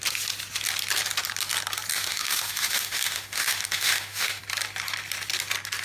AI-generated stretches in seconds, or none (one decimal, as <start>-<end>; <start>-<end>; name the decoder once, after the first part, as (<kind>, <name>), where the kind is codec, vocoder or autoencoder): 1.9-4.4 (autoencoder, DAC-VAE)